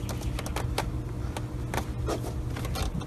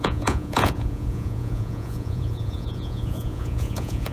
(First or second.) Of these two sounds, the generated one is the second